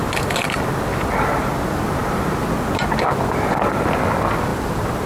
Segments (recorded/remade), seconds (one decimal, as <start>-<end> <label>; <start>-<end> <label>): 0.0-4.5 recorded; 4.5-5.1 remade